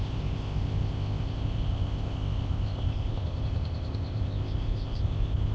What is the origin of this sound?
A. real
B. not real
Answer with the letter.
B